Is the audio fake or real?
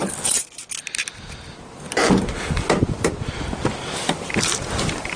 real